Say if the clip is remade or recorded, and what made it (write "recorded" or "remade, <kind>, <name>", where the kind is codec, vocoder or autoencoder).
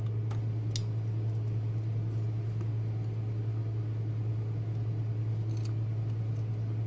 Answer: recorded